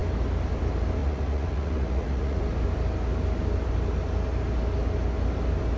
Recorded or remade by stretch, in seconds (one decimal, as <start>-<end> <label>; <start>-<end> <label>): 0.0-1.0 recorded; 1.0-2.4 remade; 2.4-5.8 recorded